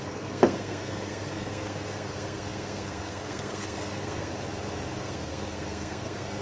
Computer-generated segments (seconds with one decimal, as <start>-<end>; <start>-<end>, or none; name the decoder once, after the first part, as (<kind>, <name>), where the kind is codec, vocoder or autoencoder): 0.0-4.3 (codec, SNAC); 5.0-6.4